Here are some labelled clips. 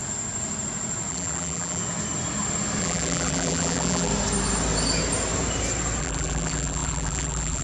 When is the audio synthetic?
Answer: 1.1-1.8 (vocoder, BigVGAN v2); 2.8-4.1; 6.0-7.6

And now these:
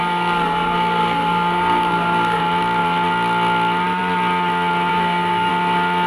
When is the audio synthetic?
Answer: 0.0-2.4 (codec, SNAC); 4.9-5.5

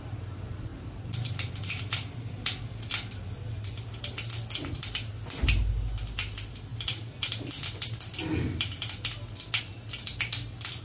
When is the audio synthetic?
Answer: none

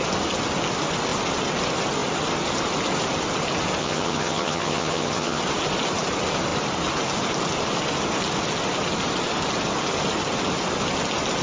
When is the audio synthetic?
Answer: 3.8-5.4 (vocoder, HiFi-GAN)

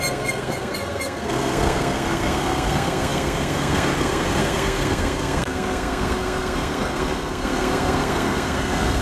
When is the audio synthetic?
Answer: 0.0-9.0 (codec, SNAC)